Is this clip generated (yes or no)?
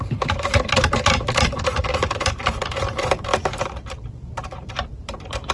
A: yes